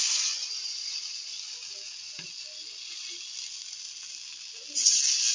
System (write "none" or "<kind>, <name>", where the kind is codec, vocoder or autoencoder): none